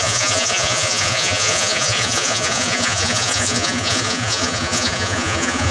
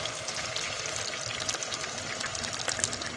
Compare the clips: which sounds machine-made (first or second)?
first